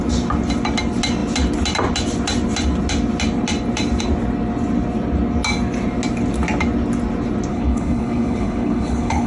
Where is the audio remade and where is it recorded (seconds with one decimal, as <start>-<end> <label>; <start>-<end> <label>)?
0.0-7.5 recorded; 7.5-9.3 remade